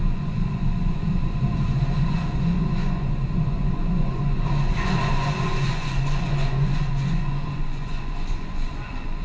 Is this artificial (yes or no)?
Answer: yes